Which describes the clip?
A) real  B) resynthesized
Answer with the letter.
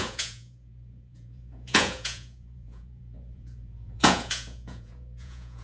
B